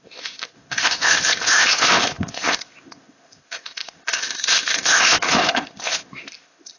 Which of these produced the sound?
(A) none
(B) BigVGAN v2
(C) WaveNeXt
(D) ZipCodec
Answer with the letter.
D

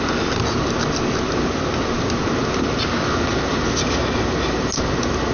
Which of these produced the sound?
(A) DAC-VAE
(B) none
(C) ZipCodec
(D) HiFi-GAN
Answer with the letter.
B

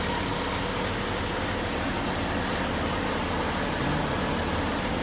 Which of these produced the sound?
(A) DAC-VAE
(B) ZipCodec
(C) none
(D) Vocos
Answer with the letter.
C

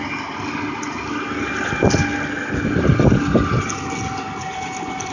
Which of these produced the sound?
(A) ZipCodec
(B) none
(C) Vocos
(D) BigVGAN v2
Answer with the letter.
B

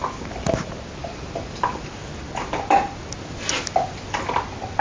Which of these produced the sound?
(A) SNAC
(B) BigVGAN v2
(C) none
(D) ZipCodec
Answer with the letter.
C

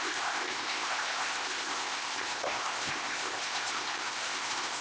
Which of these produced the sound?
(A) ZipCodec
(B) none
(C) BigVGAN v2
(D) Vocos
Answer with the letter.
A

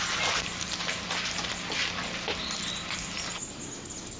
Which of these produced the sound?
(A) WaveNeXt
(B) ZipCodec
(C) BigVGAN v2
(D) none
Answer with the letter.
D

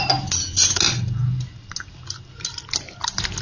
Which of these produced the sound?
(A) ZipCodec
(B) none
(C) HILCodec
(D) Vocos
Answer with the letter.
B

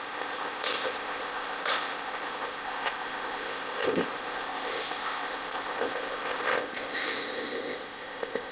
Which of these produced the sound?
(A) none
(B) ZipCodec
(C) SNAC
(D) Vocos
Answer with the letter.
B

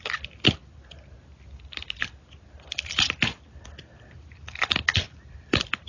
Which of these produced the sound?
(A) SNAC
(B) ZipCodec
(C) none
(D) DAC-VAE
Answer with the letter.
C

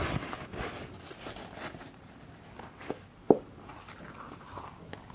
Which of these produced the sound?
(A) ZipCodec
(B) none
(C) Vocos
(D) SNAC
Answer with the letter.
B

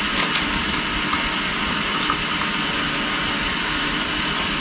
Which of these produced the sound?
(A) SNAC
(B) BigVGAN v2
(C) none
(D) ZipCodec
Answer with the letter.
C